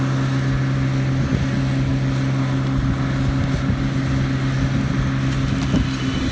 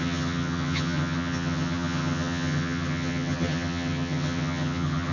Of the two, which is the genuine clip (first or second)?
first